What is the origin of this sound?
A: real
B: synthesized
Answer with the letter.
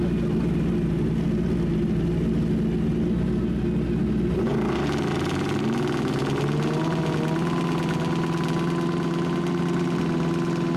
A